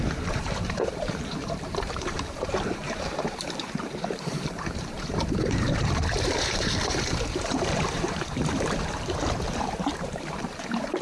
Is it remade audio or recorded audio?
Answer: remade